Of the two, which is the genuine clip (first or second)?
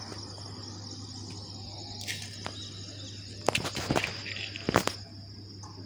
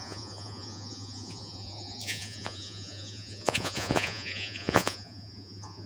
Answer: first